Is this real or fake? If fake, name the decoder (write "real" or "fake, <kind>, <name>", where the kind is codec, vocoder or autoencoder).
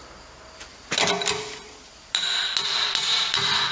real